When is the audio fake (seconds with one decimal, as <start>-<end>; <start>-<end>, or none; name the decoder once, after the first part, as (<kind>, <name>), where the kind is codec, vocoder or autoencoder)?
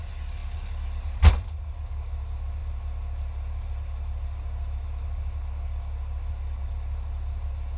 none